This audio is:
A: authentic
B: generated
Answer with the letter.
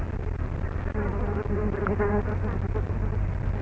A